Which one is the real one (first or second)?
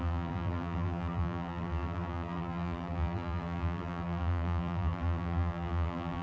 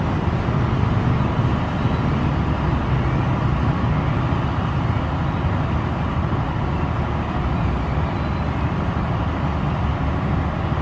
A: second